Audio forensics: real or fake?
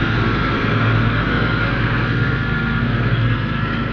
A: fake